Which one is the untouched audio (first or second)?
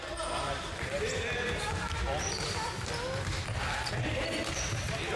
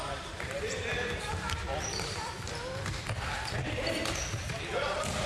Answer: first